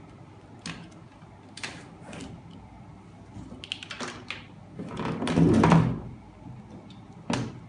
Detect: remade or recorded recorded